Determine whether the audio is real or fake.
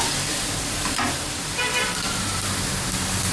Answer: fake